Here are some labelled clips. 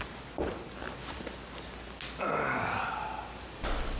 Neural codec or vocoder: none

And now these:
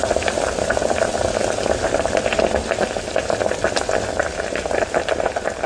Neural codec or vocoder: none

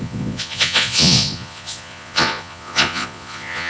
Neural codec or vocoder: vocoder, Vocos